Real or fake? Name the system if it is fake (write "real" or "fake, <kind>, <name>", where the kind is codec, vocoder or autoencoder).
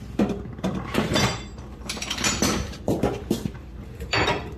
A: fake, vocoder, BigVGAN v2